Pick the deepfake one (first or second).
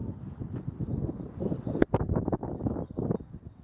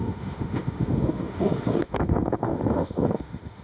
second